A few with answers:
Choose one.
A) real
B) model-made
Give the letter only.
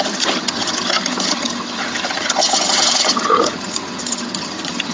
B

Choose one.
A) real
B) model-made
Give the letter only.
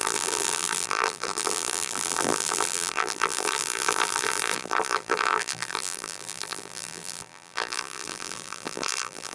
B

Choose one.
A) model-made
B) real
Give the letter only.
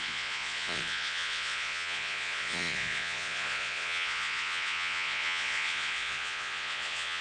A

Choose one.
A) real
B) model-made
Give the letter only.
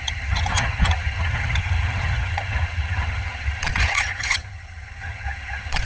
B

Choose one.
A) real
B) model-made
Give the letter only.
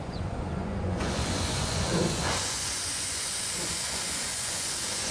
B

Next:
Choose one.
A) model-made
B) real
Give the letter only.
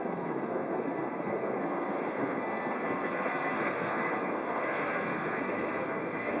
A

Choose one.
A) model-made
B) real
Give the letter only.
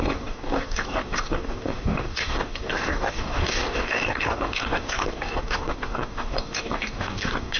A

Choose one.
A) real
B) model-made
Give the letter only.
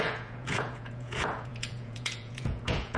B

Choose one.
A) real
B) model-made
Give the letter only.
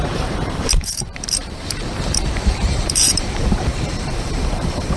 B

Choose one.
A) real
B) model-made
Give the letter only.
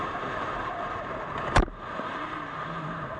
B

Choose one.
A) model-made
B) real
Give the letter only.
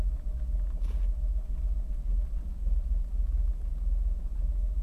B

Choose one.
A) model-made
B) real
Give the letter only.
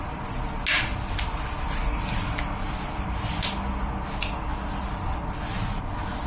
B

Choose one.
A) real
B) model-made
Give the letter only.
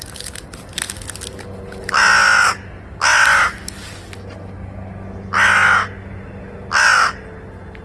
A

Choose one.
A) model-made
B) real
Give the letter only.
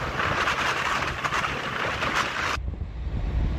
B